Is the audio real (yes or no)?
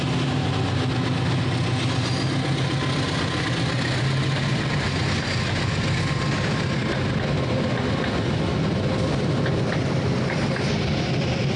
yes